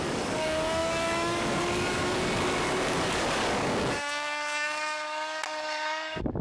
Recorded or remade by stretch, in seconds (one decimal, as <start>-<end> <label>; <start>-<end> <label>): 0.0-6.4 remade